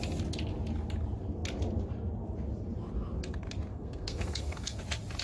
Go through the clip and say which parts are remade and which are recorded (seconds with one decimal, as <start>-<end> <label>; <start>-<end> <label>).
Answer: 0.0-3.7 recorded; 3.7-4.8 remade; 4.8-5.2 recorded